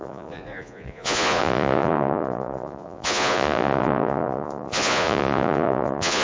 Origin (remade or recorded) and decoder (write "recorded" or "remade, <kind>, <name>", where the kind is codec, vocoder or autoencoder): remade, vocoder, Vocos